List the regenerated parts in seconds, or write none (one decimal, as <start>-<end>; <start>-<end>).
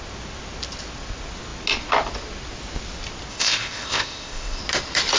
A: 3.3-4.6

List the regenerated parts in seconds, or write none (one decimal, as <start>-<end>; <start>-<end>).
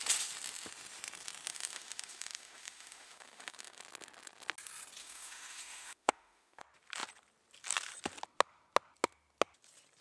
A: 1.5-3.8; 5.0-6.6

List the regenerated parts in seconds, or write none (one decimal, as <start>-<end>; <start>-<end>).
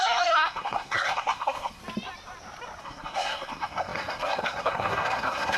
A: 0.0-1.8; 2.8-5.6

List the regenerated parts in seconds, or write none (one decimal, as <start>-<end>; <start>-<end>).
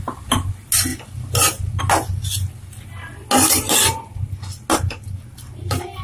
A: none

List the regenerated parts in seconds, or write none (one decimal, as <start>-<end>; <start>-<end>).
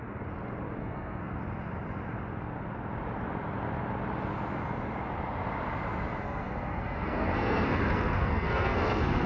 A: 0.8-1.3; 6.2-9.3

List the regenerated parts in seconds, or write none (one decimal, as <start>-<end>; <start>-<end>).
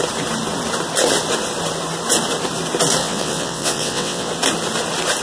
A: 3.0-4.3